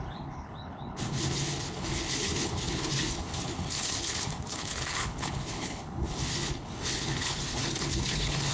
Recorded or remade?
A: remade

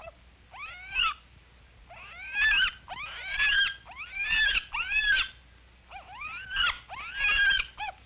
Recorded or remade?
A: recorded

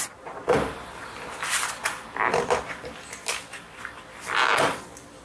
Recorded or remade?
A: recorded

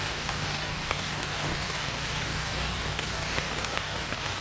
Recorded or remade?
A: remade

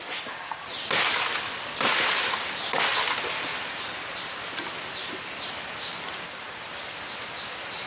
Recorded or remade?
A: recorded